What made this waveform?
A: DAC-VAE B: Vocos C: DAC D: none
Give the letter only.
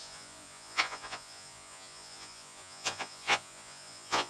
B